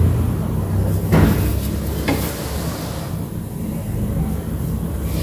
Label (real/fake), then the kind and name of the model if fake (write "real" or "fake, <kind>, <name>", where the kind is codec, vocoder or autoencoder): real